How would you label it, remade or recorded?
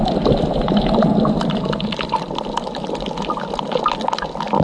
recorded